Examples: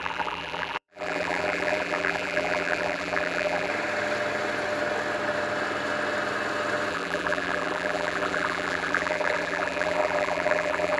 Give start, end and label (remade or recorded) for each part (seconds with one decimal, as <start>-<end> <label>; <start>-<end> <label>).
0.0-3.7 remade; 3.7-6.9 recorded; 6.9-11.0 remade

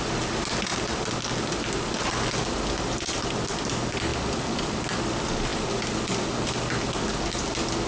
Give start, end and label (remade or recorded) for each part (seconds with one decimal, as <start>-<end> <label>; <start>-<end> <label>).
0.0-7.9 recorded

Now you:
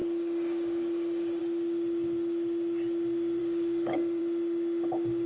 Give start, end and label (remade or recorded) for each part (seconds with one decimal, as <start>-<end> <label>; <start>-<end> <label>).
0.0-1.4 remade; 1.4-3.4 recorded; 3.4-4.2 remade; 4.2-5.3 recorded

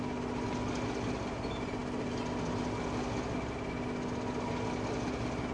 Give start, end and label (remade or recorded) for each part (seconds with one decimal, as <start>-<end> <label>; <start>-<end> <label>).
0.0-5.5 recorded

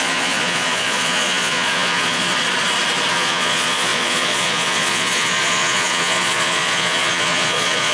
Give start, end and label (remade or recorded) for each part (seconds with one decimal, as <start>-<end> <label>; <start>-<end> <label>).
0.0-2.3 remade; 2.3-3.1 recorded; 3.1-7.9 remade